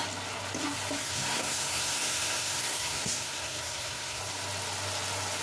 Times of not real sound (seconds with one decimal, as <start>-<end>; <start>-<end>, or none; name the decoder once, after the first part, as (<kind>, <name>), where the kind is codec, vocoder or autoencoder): 1.0-4.2 (codec, SNAC)